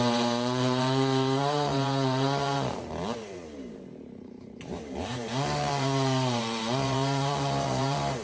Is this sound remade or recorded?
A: remade